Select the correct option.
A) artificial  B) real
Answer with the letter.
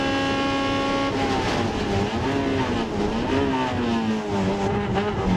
B